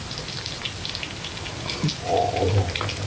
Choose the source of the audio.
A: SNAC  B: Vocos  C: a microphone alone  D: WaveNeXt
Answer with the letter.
C